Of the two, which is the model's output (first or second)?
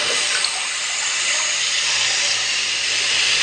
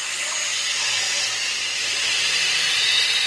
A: first